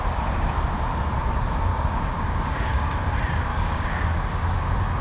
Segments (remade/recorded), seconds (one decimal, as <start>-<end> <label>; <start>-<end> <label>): 0.0-1.7 recorded; 1.7-3.0 remade; 3.0-3.5 recorded; 3.5-4.1 remade; 4.1-5.0 recorded